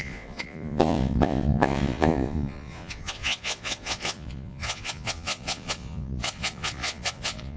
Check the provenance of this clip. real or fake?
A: fake